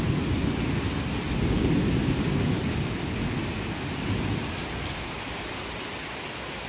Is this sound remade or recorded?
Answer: recorded